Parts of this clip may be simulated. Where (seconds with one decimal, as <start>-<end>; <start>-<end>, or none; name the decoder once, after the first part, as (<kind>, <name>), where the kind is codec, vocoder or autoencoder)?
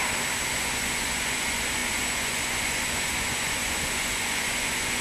0.5-5.0 (vocoder, Vocos)